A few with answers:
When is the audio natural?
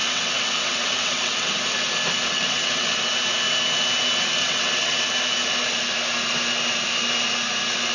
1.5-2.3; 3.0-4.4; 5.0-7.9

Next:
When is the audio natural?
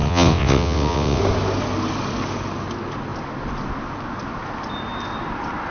1.2-5.7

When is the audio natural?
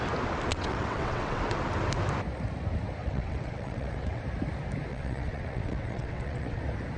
0.0-0.5; 1.4-3.0; 4.2-4.9; 6.6-7.0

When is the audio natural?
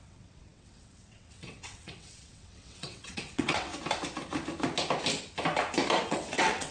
3.7-6.0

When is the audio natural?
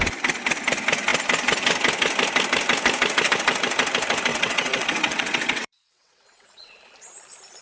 0.0-4.3; 6.7-7.6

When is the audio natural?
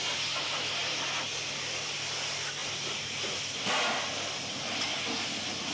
0.0-5.7